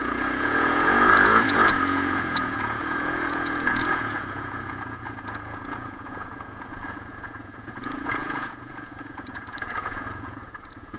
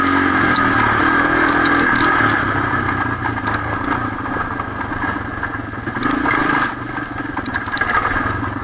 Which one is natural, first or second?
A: second